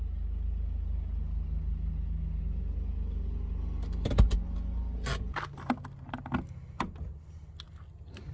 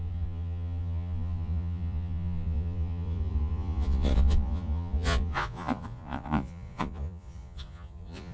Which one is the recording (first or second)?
first